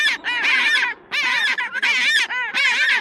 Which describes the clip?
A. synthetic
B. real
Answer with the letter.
B